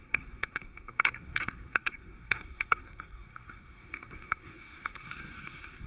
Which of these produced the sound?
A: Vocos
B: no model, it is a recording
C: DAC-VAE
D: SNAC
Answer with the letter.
D